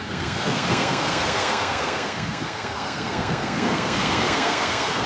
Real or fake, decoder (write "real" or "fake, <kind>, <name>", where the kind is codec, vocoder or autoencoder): fake, codec, SNAC